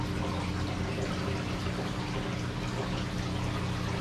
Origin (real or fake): real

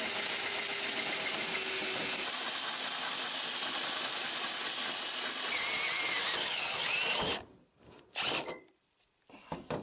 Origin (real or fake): real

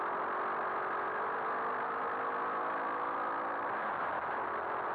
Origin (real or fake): real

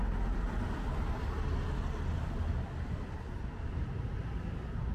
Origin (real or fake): real